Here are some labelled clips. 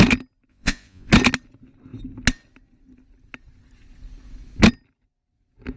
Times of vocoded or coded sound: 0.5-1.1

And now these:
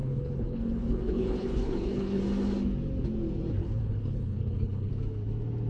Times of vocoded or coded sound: 0.0-2.2; 3.6-4.9